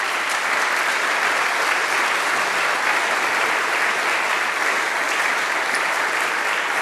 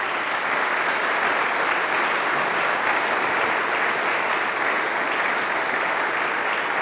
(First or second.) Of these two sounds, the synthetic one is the first